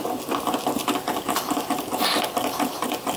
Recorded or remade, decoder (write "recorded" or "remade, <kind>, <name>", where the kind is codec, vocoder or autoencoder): recorded